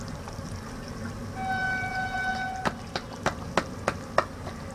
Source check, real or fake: real